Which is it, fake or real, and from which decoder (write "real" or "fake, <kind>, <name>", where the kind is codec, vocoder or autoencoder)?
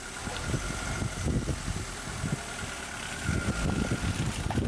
real